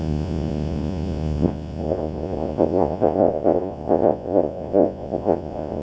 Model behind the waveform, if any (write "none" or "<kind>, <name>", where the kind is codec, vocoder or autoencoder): vocoder, Vocos